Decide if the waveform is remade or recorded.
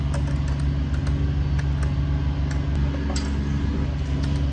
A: recorded